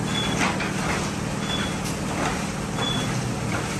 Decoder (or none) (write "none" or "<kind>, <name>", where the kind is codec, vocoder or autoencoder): none